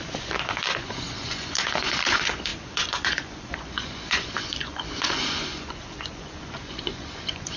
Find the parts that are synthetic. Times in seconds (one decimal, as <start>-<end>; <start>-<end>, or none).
0.0-7.6